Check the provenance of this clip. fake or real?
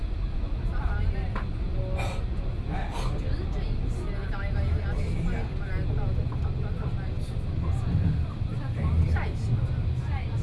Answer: real